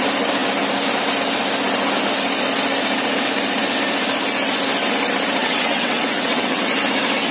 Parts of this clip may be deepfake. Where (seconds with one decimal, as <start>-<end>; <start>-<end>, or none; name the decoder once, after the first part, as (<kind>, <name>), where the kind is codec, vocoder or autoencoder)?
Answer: 5.4-6.6 (vocoder, WaveNeXt)